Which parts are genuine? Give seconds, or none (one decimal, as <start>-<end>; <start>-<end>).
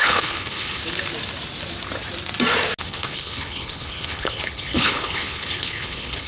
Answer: 0.8-2.8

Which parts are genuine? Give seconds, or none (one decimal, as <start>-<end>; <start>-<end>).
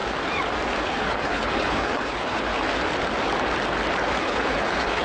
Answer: 0.0-0.8; 2.5-4.2